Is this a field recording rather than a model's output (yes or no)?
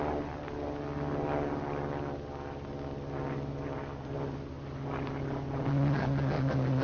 yes